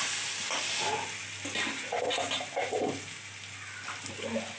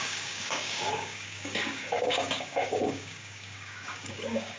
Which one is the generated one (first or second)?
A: second